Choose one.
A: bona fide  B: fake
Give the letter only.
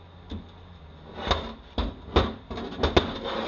A